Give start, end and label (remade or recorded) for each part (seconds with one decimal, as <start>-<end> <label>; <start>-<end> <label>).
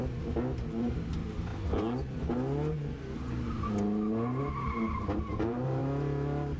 0.0-0.6 recorded; 0.6-1.5 remade; 1.5-4.4 recorded; 4.4-5.8 remade; 5.8-6.6 recorded